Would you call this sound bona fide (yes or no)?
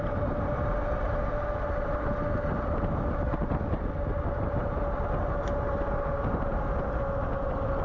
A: yes